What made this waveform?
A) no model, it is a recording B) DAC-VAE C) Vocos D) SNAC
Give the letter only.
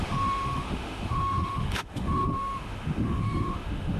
B